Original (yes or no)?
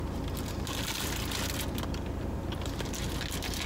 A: yes